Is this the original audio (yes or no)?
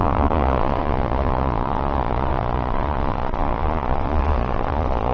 no